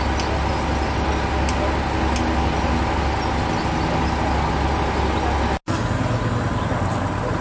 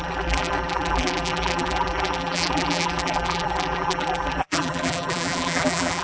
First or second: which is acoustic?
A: first